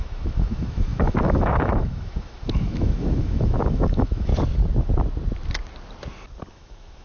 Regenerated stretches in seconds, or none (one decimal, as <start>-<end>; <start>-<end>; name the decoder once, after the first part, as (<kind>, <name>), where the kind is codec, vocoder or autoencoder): 0.0-4.3 (autoencoder, DAC-VAE); 6.5-7.0